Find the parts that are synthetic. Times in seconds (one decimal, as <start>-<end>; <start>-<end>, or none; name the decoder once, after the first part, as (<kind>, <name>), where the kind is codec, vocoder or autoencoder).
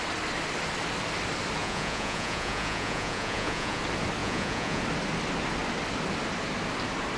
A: 1.6-3.8 (vocoder, Vocos); 4.2-4.8